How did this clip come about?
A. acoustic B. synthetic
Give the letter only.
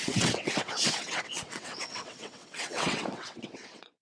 B